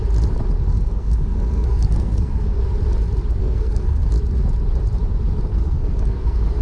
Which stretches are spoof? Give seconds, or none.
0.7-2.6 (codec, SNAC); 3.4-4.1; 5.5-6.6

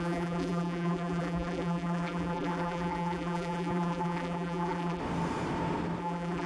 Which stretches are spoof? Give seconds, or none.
0.0-5.0 (vocoder, BigVGAN v2); 6.0-6.5

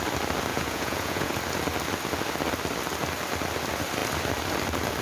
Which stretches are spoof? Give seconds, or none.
0.5-1.3 (vocoder, Vocos)